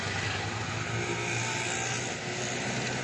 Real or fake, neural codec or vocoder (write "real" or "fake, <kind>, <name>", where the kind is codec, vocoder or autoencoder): real